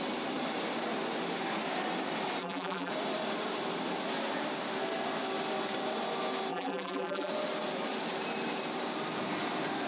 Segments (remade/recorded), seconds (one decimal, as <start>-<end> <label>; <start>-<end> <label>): 0.0-2.4 recorded; 2.4-2.9 remade; 2.9-6.5 recorded; 6.5-7.3 remade; 7.3-9.9 recorded